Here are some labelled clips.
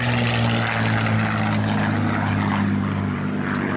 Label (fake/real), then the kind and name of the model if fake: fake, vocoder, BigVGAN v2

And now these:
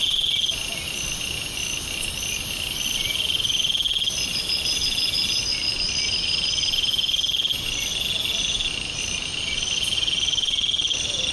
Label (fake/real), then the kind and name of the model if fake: real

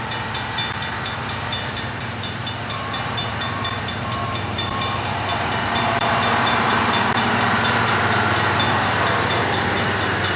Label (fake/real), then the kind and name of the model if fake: fake, vocoder, BigVGAN v2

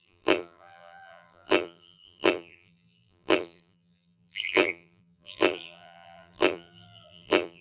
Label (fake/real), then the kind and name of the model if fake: fake, vocoder, BigVGAN v2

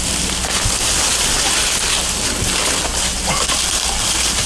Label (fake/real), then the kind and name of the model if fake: real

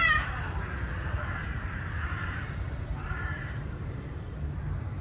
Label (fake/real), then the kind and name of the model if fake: fake, vocoder, BigVGAN v2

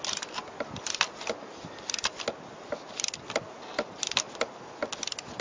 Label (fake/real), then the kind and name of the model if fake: real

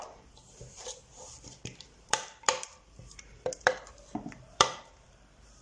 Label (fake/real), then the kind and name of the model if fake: fake, vocoder, BigVGAN v2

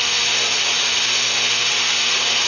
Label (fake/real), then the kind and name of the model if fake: real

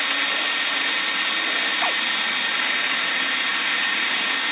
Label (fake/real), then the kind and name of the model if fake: real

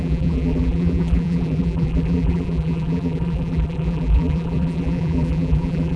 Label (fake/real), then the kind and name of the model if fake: fake, vocoder, BigVGAN v2